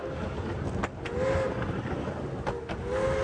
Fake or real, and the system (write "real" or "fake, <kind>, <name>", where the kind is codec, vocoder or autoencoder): real